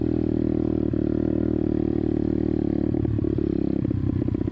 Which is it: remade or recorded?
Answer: remade